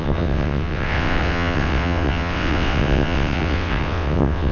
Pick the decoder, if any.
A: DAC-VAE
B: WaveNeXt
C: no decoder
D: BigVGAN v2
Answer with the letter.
B